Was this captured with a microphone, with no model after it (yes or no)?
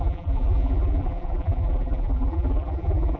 no